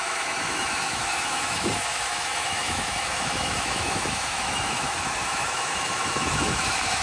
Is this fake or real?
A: fake